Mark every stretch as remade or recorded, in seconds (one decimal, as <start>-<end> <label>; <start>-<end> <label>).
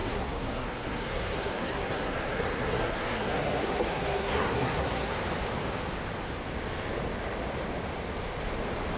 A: 0.0-5.2 remade; 5.2-9.0 recorded